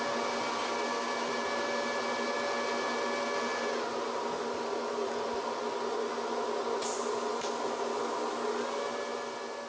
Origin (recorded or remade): recorded